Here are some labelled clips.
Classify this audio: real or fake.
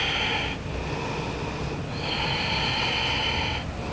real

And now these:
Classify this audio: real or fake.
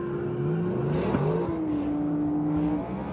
real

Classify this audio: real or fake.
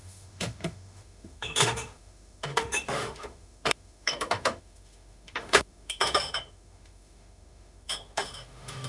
fake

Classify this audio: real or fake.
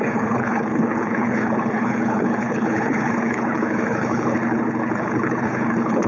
fake